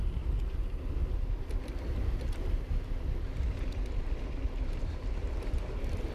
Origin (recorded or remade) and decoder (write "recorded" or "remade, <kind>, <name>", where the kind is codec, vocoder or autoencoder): recorded